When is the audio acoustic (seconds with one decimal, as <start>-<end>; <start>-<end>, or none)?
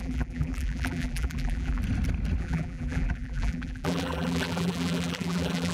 1.8-2.4